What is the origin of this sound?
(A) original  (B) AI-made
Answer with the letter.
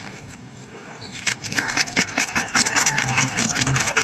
B